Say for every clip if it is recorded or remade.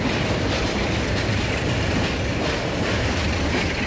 recorded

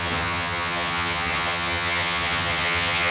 remade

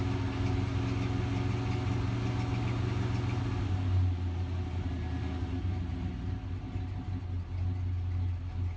recorded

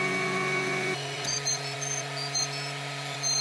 remade